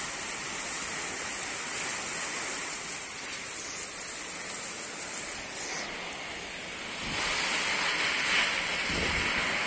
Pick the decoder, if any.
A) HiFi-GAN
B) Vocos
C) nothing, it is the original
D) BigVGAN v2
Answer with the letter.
C